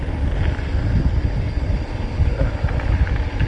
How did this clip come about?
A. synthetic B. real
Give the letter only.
B